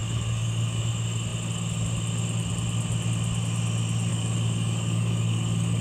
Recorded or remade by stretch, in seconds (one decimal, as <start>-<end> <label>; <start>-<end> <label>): 0.0-0.9 remade; 0.9-4.1 recorded; 4.1-5.8 remade